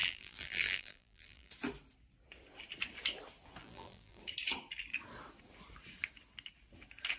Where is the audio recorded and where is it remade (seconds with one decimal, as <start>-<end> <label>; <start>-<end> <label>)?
0.0-1.5 remade; 1.5-3.6 recorded; 3.6-4.2 remade; 4.2-7.2 recorded